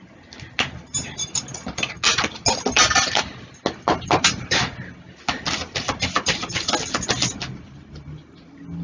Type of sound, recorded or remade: recorded